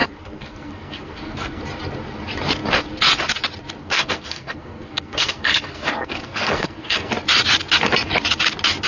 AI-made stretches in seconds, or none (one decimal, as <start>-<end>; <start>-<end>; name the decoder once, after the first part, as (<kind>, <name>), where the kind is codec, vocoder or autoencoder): 0.0-1.6 (codec, SNAC); 3.8-7.1